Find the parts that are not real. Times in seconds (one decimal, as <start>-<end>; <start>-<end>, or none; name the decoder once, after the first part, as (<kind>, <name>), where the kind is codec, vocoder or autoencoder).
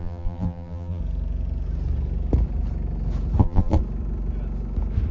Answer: 0.0-1.0 (vocoder, BigVGAN v2); 3.4-3.8